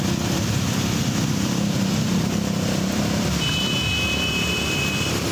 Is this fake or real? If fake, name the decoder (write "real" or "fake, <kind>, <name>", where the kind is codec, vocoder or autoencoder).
fake, vocoder, BigVGAN v2